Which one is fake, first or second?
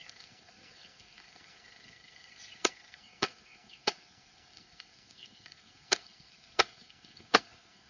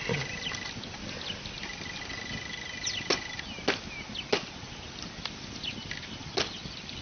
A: first